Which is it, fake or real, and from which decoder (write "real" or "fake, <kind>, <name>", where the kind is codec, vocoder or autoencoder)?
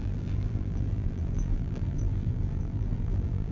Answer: fake, vocoder, BigVGAN v2